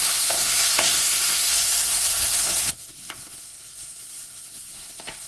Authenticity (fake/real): fake